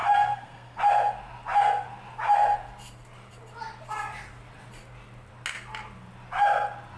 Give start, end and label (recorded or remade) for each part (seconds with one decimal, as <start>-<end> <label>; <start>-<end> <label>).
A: 0.0-0.8 remade; 0.8-7.0 recorded